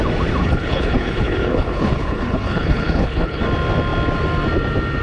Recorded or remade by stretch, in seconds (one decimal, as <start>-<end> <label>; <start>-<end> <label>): 0.0-0.4 recorded; 0.4-3.4 remade; 3.4-5.0 recorded

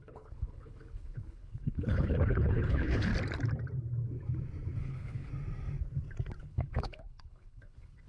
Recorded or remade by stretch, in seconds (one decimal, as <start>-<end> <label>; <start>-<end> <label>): 0.0-3.1 remade; 3.1-4.8 recorded; 4.8-5.3 remade; 5.3-6.4 recorded; 6.4-8.1 remade

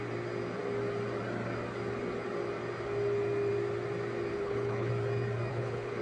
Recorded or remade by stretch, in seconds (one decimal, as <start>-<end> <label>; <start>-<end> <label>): 0.0-4.3 recorded; 4.3-4.9 remade; 4.9-5.5 recorded; 5.5-6.0 remade

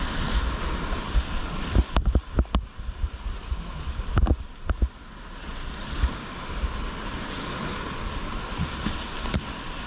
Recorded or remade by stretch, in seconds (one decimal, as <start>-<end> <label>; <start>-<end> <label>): 0.0-9.9 recorded

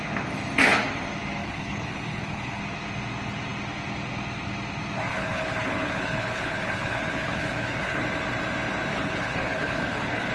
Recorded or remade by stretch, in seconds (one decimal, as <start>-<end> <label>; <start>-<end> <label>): 0.0-1.4 recorded; 1.4-2.6 remade; 2.6-5.1 recorded; 5.1-8.0 remade; 8.0-8.9 recorded; 8.9-10.3 remade